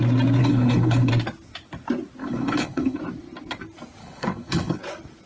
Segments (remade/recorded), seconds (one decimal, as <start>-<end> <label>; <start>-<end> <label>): 0.0-0.4 recorded; 0.4-1.1 remade; 1.1-2.2 recorded; 2.2-3.0 remade; 3.0-4.0 recorded; 4.0-4.8 remade; 4.8-5.3 recorded